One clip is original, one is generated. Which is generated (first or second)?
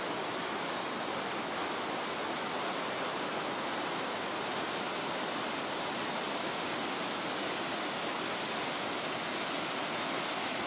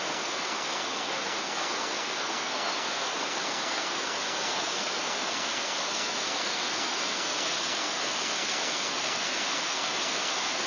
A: second